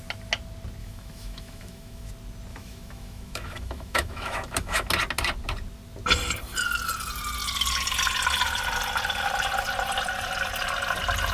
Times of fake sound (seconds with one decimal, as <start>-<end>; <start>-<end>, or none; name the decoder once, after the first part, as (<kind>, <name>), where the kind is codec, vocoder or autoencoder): 0.8-2.1 (autoencoder, DAC-VAE); 2.5-4.9